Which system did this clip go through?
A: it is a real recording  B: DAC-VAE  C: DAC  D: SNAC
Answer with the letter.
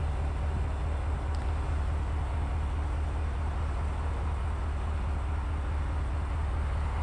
A